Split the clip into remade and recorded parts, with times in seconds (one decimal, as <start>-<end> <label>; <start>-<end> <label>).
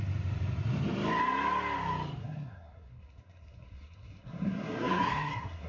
0.0-2.2 recorded; 2.2-5.7 remade